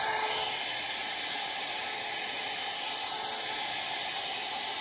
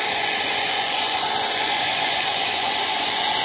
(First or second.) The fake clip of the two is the second